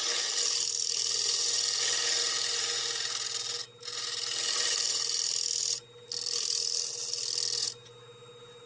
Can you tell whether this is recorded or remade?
recorded